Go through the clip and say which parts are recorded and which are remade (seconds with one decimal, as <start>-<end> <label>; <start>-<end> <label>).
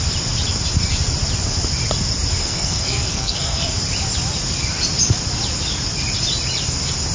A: 0.0-2.4 recorded; 2.4-3.6 remade; 3.6-7.1 recorded